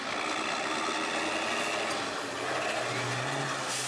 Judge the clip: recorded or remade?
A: recorded